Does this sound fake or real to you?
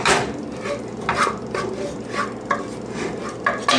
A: real